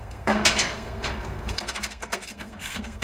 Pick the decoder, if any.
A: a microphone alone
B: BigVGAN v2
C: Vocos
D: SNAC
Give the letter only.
D